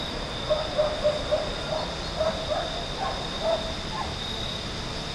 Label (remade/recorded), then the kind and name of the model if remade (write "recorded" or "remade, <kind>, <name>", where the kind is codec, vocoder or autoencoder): recorded